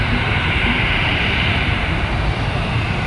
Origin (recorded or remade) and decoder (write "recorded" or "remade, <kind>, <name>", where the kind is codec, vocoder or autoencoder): remade, vocoder, BigVGAN v2